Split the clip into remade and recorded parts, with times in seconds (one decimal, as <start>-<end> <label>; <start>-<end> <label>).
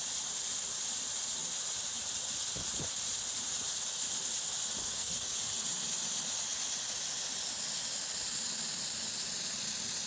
0.0-4.8 recorded; 4.8-5.4 remade; 5.4-10.1 recorded